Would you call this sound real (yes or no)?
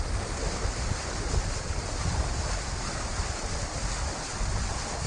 yes